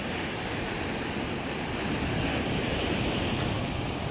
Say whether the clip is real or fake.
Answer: real